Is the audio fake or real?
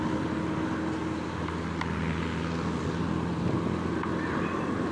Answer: real